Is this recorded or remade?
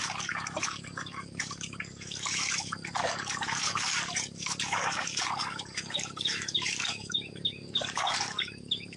remade